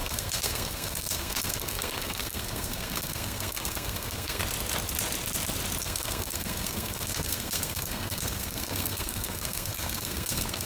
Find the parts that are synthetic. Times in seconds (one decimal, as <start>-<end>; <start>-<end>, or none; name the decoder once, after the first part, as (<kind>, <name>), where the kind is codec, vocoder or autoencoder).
0.0-4.4 (codec, SNAC); 5.8-10.7